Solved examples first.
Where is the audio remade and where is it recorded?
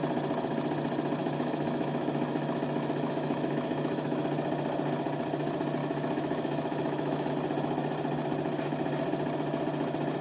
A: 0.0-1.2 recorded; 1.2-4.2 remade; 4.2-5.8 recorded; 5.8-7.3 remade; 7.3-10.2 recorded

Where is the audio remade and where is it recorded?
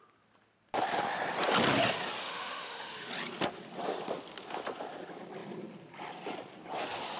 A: 0.0-2.2 recorded; 2.2-3.1 remade; 3.1-7.2 recorded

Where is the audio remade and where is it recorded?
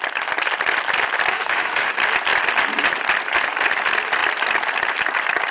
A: 0.0-1.3 recorded; 1.3-1.9 remade; 1.9-5.5 recorded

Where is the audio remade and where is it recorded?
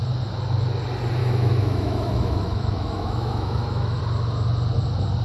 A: 0.0-1.2 recorded; 1.2-4.0 remade; 4.0-5.2 recorded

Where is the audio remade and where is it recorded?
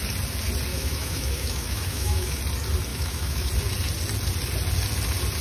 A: 0.0-0.7 recorded; 0.7-2.4 remade; 2.4-2.9 recorded; 2.9-3.5 remade; 3.5-5.4 recorded